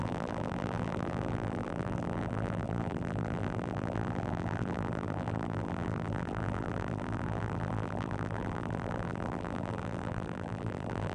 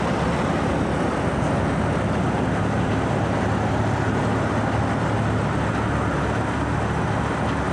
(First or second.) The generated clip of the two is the first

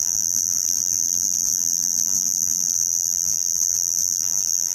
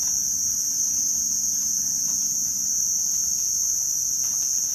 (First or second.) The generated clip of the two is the first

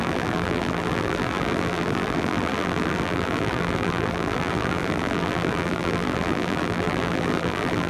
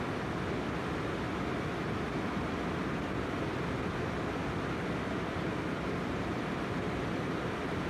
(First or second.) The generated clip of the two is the first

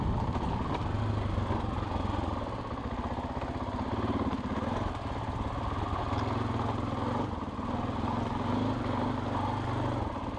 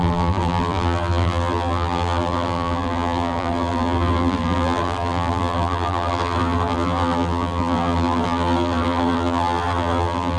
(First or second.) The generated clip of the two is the second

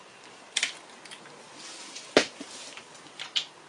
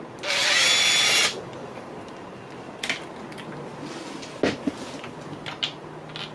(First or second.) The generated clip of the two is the first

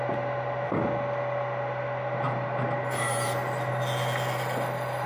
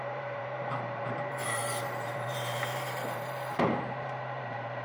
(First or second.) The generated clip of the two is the second